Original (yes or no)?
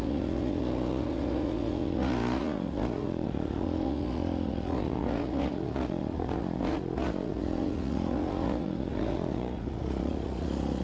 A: no